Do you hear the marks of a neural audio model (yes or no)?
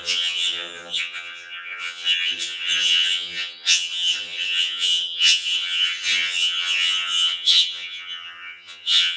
yes